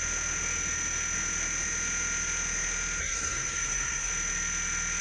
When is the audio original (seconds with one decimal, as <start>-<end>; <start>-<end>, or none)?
0.0-3.0; 4.1-5.0